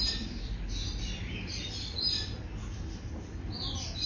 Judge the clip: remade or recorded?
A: remade